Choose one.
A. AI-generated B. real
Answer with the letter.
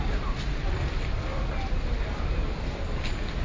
B